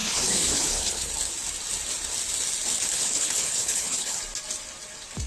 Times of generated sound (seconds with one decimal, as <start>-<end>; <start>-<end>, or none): 0.0-1.1; 2.9-4.2